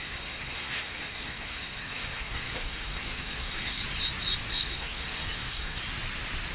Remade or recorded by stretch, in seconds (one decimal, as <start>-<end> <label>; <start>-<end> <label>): 0.0-3.8 remade; 3.8-4.5 recorded; 4.5-5.8 remade; 5.8-6.5 recorded